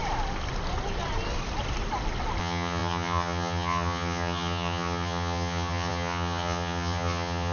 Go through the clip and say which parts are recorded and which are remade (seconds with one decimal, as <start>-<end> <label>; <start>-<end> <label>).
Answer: 0.0-2.4 recorded; 2.4-7.5 remade